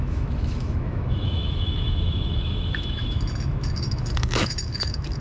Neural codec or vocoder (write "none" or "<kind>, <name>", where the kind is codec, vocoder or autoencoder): autoencoder, DAC-VAE